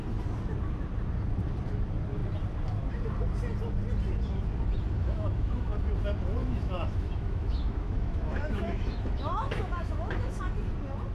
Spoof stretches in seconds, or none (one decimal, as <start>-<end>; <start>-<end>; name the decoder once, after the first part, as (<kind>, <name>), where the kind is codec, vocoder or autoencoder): 5.0-5.8 (autoencoder, DAC-VAE); 6.4-10.4